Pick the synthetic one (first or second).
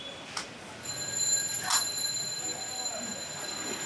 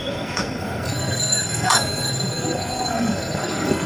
second